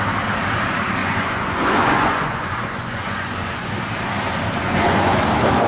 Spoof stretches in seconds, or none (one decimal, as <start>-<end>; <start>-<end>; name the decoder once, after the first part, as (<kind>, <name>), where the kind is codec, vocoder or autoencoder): 1.0-3.7 (vocoder, Vocos); 4.6-5.2

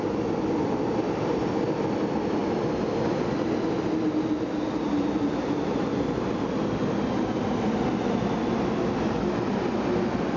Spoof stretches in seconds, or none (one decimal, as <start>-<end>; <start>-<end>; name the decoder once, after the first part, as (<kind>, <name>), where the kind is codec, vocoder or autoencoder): none

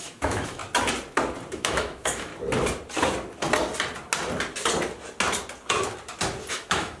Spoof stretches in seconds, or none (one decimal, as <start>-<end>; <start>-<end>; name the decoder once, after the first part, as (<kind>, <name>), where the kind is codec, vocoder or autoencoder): 0.0-0.6 (autoencoder, DAC-VAE); 1.5-2.3; 6.5-7.0